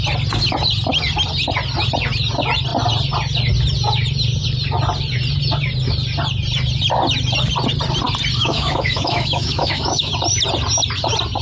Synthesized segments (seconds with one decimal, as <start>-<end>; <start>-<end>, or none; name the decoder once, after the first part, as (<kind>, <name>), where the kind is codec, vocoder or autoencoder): 8.4-10.1 (autoencoder, DAC-VAE)